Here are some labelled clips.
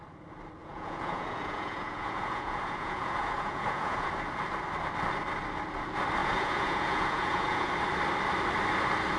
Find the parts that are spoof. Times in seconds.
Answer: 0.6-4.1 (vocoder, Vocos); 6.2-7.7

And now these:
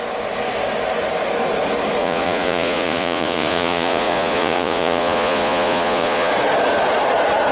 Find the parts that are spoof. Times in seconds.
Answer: 2.0-6.3 (vocoder, Vocos)

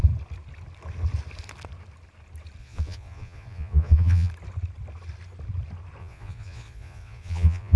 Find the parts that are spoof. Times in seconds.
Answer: 2.6-4.3 (vocoder, Vocos); 6.0-7.8

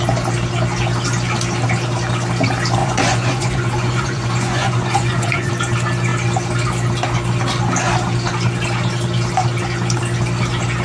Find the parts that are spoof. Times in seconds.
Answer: 2.8-5.5 (vocoder, Vocos)

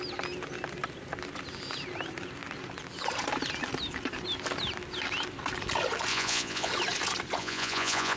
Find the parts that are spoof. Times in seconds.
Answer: 6.1-6.7 (vocoder, Vocos); 7.4-8.2

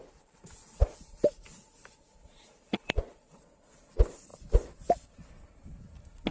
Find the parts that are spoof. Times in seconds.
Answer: 2.2-3.9 (vocoder, Vocos)

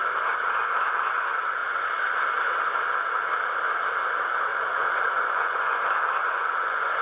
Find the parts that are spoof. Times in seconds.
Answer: 4.5-5.8 (vocoder, Vocos); 6.2-7.0

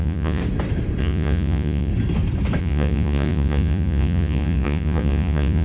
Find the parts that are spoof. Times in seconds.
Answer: 0.0-0.4 (vocoder, Vocos); 1.0-1.9; 2.6-5.6